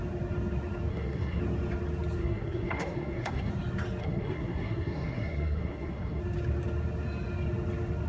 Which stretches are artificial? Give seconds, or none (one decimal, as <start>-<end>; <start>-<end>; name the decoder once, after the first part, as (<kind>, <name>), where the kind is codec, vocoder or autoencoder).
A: 0.9-1.4 (codec, SNAC); 2.2-3.5; 4.0-6.2

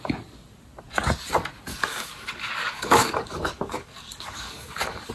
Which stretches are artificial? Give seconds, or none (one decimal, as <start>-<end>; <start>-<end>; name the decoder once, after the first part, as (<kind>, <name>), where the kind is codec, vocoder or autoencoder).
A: 1.7-5.1 (codec, DAC)

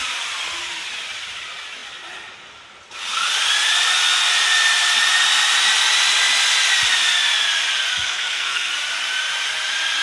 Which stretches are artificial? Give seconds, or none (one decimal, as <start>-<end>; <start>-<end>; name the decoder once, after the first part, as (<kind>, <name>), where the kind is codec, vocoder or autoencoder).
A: 7.9-8.7 (codec, SNAC)

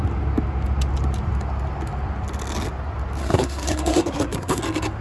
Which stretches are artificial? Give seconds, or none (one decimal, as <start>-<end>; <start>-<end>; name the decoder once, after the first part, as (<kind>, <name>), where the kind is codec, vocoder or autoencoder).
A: 3.2-4.6 (codec, SNAC)

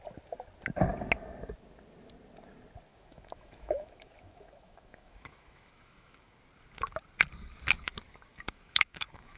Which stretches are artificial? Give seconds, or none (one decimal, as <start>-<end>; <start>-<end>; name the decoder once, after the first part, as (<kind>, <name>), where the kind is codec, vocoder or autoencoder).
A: 2.9-6.4 (autoencoder, DAC-VAE); 8.3-9.4

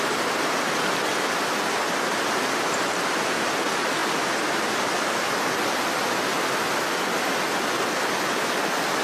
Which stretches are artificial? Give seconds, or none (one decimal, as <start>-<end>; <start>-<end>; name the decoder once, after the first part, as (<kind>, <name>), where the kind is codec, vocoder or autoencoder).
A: none

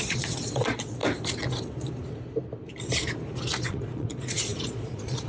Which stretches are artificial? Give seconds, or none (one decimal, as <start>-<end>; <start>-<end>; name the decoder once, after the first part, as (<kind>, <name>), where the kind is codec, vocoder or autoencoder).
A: 0.0-1.0 (vocoder, Vocos); 3.6-5.3